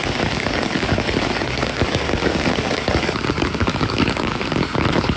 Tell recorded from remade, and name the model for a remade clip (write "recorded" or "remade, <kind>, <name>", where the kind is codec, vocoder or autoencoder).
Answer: remade, codec, DAC